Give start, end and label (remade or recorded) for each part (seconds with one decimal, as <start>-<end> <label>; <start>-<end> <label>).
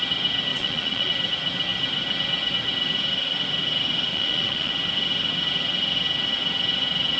0.0-0.5 recorded; 0.5-1.1 remade; 1.1-4.1 recorded; 4.1-4.7 remade; 4.7-7.2 recorded